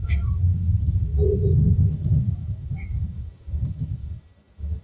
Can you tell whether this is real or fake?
fake